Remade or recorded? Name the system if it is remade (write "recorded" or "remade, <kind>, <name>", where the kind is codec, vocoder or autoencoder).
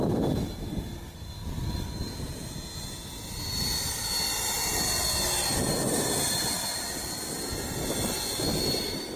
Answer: recorded